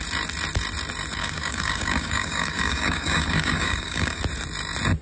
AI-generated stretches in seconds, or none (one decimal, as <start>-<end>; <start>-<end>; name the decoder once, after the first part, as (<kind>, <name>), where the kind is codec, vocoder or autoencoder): 1.2-4.2 (codec, DAC)